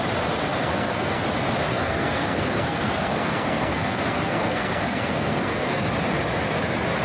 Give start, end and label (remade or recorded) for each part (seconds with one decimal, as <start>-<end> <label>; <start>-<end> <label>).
0.0-0.5 recorded; 0.5-1.2 remade; 1.2-1.7 recorded; 1.7-5.9 remade; 5.9-7.0 recorded